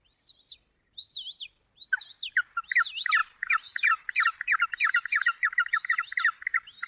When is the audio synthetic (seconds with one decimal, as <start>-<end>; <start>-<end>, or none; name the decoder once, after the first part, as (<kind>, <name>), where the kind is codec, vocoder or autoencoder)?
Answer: 3.2-6.0 (vocoder, BigVGAN v2)